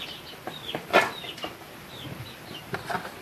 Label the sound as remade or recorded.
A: recorded